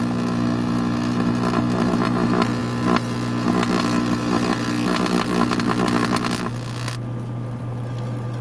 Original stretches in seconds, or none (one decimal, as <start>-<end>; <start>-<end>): 0.0-8.4